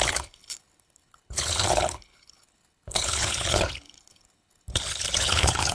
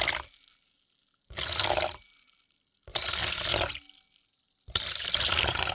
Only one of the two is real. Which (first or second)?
second